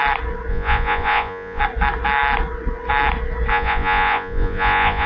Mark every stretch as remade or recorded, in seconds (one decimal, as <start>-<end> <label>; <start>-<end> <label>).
0.0-0.5 recorded; 0.5-1.6 remade; 1.6-3.5 recorded; 3.5-5.1 remade